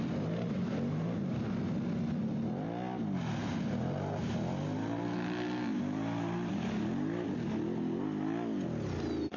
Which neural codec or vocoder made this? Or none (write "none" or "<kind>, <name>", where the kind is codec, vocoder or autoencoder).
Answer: none